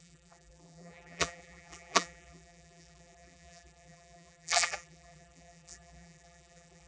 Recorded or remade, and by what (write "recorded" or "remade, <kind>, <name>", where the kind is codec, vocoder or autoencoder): remade, vocoder, BigVGAN v2